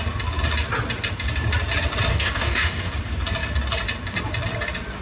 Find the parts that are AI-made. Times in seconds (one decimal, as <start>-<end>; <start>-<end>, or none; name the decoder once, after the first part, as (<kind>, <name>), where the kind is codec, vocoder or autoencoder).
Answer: 2.1-2.9 (codec, DAC)